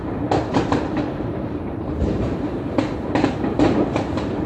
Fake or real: fake